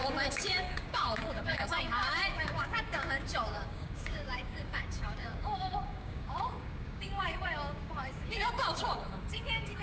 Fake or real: fake